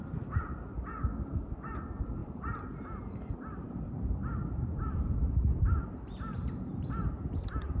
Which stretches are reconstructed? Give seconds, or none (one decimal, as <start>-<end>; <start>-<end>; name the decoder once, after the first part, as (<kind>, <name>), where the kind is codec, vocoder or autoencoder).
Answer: 2.2-6.9 (vocoder, BigVGAN v2)